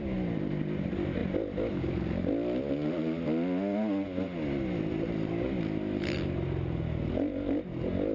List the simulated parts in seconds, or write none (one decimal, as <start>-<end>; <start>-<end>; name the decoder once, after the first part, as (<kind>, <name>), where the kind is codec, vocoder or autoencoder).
none